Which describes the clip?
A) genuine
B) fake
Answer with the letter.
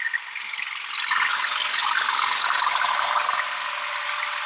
A